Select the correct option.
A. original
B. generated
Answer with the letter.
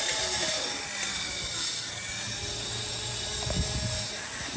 A